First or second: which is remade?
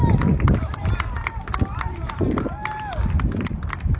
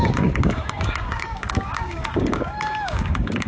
second